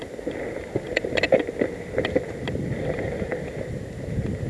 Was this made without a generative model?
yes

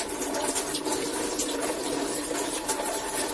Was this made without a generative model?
no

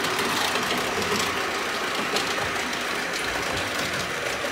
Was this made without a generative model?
yes